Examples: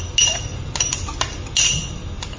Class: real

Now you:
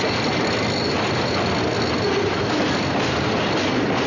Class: real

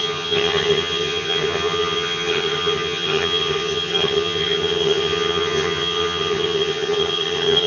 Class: fake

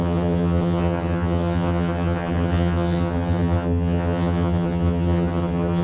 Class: fake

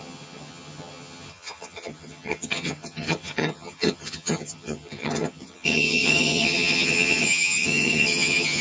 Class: fake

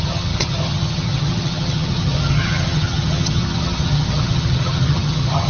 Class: fake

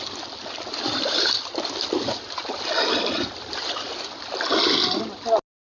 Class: real